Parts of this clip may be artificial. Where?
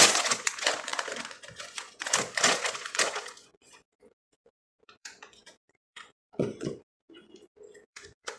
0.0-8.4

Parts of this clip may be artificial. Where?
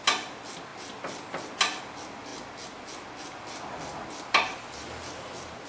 none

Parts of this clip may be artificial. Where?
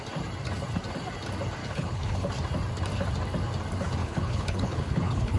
1.6-2.3; 4.0-5.4